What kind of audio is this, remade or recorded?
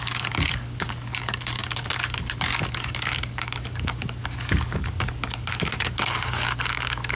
remade